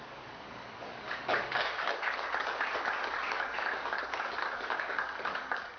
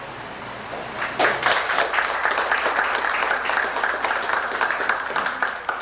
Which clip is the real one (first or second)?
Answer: second